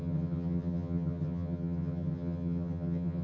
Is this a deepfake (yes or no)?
yes